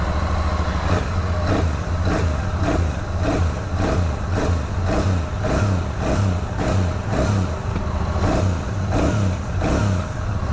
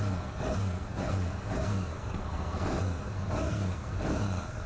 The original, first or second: first